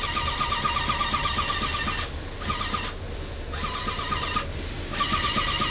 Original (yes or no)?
yes